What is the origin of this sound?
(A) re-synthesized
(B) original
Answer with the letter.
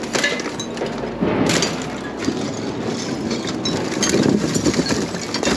B